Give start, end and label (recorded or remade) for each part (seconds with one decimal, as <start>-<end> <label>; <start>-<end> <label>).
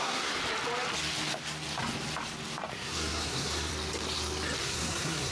0.0-0.4 remade; 0.4-2.7 recorded; 2.7-3.7 remade; 3.7-4.6 recorded; 4.6-5.3 remade